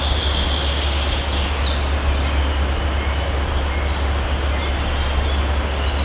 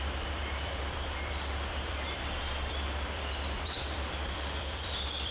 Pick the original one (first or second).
first